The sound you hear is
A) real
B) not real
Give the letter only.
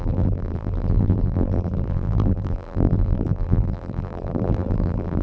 B